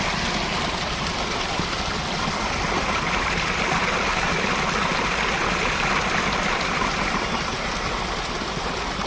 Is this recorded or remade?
recorded